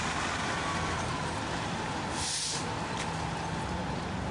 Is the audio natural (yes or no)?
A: yes